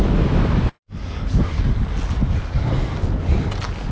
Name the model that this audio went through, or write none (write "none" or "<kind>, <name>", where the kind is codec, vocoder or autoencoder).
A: none